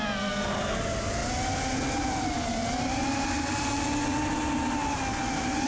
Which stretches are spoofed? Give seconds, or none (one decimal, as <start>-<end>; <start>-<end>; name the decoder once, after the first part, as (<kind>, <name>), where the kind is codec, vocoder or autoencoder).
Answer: none